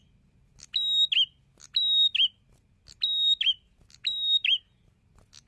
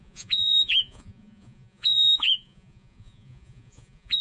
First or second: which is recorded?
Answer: first